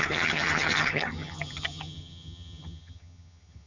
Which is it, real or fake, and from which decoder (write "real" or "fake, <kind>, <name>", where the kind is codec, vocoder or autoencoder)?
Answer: fake, vocoder, HiFi-GAN